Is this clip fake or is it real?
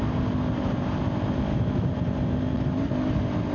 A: real